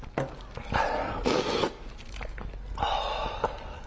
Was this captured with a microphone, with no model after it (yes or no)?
yes